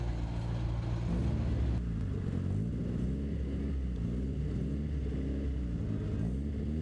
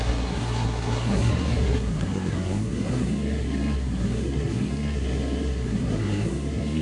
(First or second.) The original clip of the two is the first